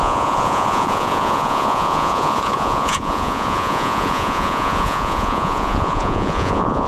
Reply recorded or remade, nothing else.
remade